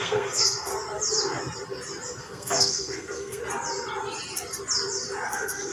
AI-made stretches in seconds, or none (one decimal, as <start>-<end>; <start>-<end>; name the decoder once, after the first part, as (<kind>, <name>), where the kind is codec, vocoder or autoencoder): 0.0-0.7 (codec, SNAC); 2.2-3.4; 5.3-5.7